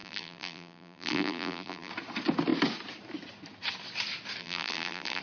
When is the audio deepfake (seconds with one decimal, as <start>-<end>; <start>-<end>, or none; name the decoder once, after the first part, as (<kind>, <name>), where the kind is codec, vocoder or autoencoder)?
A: 0.0-1.9 (vocoder, BigVGAN v2); 4.4-5.2

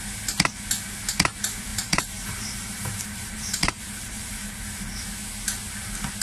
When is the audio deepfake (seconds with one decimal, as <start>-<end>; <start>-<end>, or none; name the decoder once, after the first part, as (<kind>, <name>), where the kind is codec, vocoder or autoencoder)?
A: 1.7-4.6 (vocoder, BigVGAN v2)

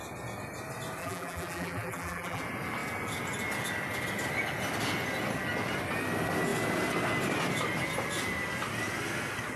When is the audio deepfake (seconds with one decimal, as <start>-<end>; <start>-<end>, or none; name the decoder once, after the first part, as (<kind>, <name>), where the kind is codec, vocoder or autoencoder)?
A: 1.0-2.4 (vocoder, BigVGAN v2)

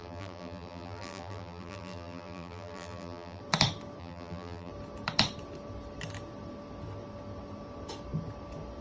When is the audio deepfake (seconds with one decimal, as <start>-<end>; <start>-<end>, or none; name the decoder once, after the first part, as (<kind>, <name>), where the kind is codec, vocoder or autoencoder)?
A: 0.0-3.4 (vocoder, BigVGAN v2); 4.0-4.7

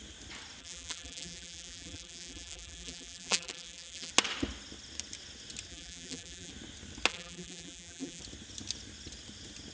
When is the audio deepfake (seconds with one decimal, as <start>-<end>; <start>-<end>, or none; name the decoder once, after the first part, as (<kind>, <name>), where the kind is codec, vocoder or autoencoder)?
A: 0.6-4.1 (vocoder, BigVGAN v2); 5.7-6.5; 7.1-8.2